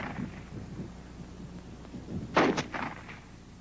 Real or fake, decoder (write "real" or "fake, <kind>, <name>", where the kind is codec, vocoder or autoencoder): real